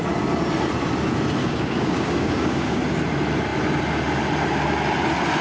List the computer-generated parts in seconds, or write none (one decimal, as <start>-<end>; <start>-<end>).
1.4-2.8